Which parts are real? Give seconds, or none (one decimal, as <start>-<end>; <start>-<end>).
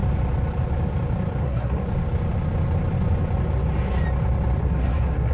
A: 0.0-1.4; 1.8-4.6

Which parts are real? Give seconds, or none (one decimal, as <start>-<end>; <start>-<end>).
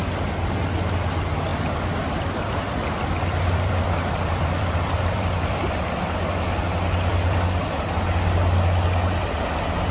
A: 0.0-1.5; 6.6-7.1; 7.7-9.9